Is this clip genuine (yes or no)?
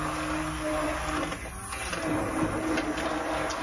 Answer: yes